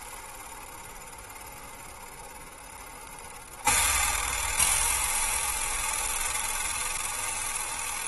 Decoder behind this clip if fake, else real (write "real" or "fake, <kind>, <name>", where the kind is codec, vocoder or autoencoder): real